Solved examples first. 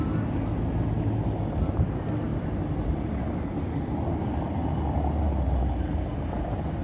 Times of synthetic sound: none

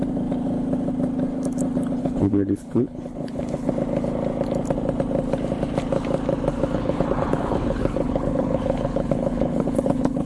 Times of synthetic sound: 2.0-3.7 (codec, HILCodec); 6.5-10.3

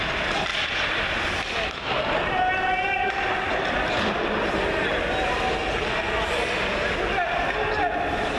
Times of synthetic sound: none

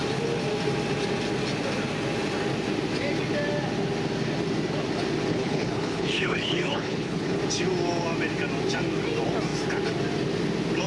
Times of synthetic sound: 5.3-7.4 (codec, HILCodec)

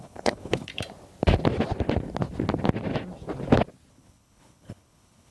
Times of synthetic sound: 0.0-0.7 (codec, HILCodec); 3.9-5.3

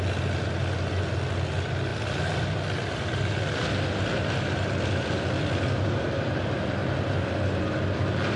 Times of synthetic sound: none